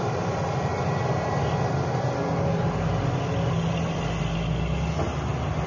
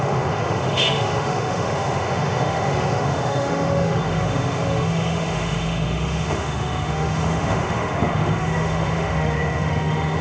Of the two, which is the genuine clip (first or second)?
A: first